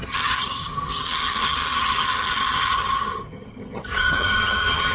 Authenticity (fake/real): fake